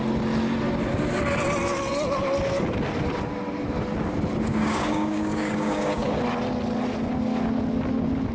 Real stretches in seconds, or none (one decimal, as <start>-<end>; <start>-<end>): 0.0-4.5; 6.2-8.3